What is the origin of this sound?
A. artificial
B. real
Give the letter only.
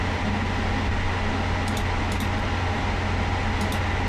B